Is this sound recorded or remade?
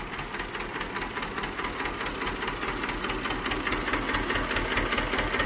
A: recorded